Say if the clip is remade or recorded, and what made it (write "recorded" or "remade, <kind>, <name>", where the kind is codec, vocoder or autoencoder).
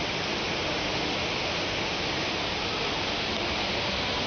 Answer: recorded